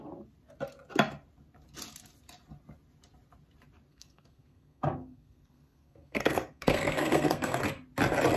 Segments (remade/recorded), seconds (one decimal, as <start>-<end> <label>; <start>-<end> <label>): 0.0-3.9 recorded; 3.9-7.6 remade; 7.6-8.4 recorded